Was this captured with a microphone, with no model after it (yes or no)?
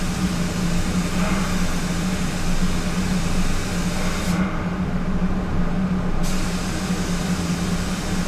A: yes